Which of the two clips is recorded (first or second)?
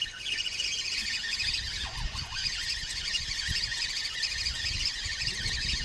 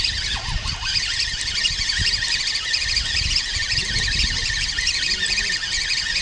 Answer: second